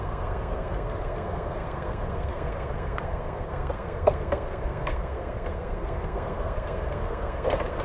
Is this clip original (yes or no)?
no